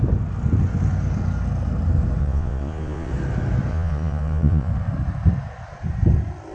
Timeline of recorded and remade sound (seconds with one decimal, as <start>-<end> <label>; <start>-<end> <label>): 0.0-2.2 recorded; 2.2-3.1 remade; 3.1-3.7 recorded; 3.7-4.7 remade; 4.7-6.5 recorded